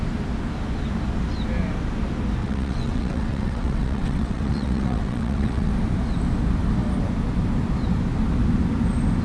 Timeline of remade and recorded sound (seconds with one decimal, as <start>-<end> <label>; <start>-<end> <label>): 0.0-2.4 recorded; 2.4-5.7 remade; 5.7-9.2 recorded